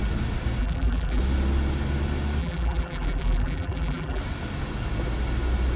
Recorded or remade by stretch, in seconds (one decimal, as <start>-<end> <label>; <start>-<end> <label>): 0.0-0.6 recorded; 0.6-1.2 remade; 1.2-2.4 recorded; 2.4-4.2 remade; 4.2-5.8 recorded